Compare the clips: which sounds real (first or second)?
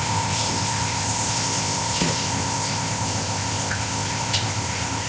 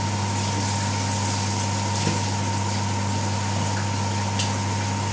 second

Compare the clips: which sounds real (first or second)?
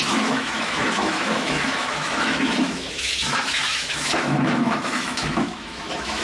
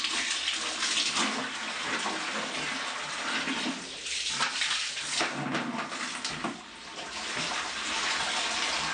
second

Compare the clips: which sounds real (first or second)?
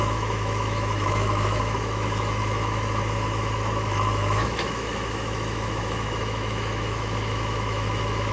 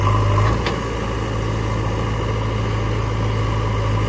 second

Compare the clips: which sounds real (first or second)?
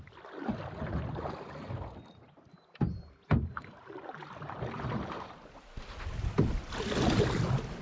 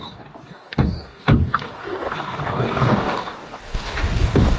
first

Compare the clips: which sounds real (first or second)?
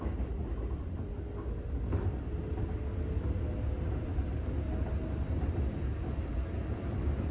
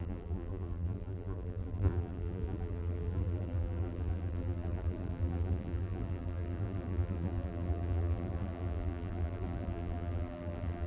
first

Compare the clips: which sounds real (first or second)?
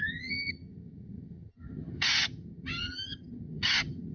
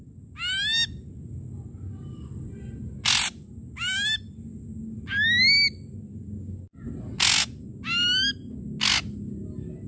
second